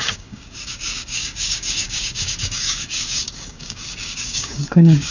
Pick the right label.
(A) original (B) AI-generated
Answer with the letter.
B